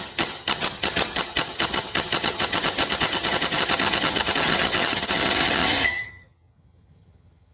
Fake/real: fake